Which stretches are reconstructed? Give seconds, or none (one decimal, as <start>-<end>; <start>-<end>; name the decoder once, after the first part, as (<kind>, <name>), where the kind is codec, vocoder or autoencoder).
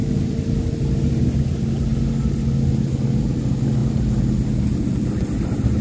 none